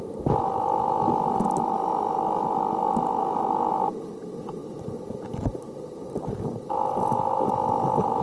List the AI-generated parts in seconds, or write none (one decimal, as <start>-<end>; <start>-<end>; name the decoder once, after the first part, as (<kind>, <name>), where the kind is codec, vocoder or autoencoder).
none